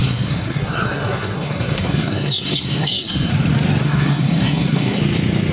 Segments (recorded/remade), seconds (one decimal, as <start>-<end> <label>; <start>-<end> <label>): 0.0-3.3 remade; 3.3-3.8 recorded; 3.8-5.0 remade; 5.0-5.5 recorded